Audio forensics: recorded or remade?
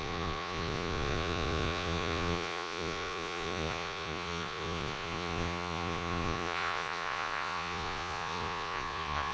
remade